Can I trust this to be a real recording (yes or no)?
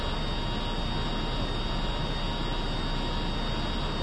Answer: yes